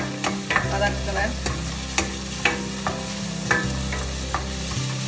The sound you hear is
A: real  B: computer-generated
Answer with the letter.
A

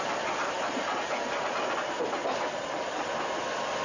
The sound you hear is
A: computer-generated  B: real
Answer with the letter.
B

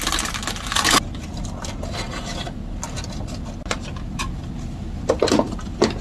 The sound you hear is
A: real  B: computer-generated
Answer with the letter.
A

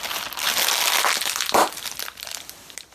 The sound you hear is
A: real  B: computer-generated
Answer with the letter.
A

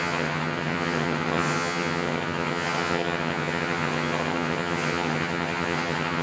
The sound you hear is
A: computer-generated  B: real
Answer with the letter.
A